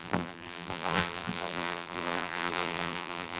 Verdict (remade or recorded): remade